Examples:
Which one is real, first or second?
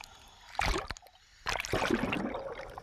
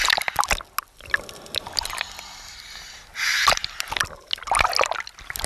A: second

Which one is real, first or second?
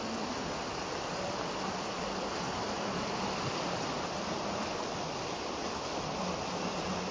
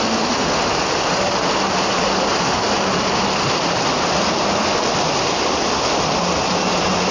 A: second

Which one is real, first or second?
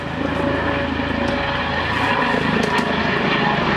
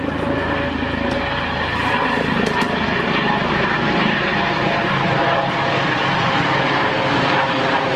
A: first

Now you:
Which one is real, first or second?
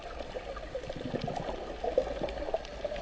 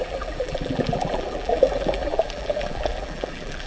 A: first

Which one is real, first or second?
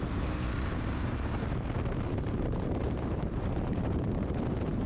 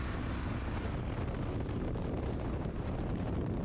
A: second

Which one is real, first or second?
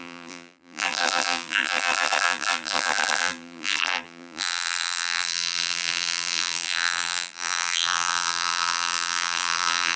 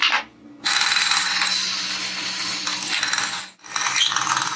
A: second